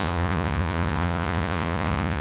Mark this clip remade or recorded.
remade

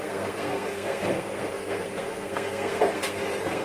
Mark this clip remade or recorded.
remade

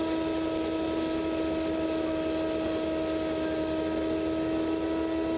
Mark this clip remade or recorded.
recorded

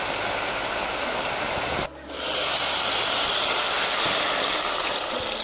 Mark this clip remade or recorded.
recorded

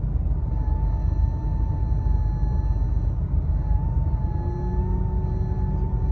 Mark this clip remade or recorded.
recorded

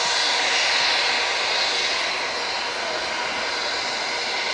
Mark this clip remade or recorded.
recorded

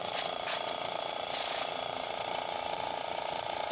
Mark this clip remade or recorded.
remade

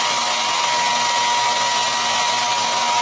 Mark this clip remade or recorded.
recorded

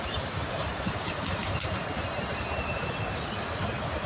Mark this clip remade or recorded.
recorded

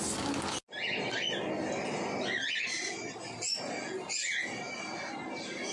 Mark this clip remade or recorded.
recorded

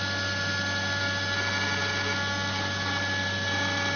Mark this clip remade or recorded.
recorded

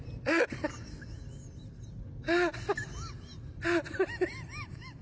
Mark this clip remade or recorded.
recorded